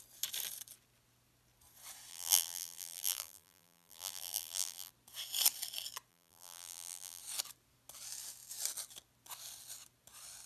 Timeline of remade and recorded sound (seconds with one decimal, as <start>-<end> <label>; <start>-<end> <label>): 0.0-2.1 recorded; 2.1-4.9 remade; 4.9-6.1 recorded; 6.1-7.2 remade; 7.2-10.5 recorded